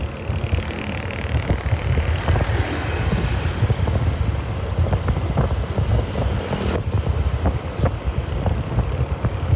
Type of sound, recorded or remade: recorded